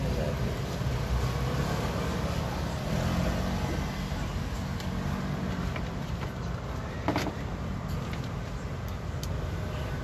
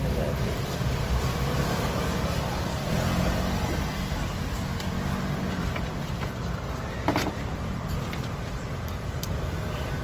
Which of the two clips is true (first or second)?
first